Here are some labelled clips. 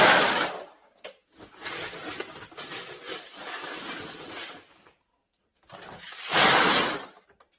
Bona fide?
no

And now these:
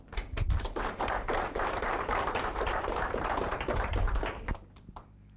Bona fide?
no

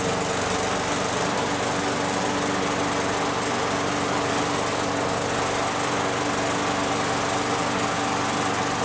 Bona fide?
yes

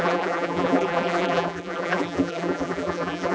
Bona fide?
no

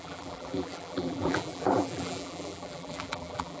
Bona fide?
no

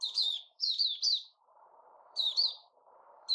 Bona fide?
no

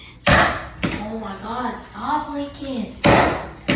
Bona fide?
yes